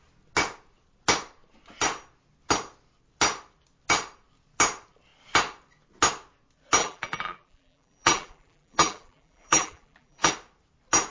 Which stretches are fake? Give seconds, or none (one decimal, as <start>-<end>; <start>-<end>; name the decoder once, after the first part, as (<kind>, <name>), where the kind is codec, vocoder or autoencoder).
6.8-10.3 (vocoder, BigVGAN v2)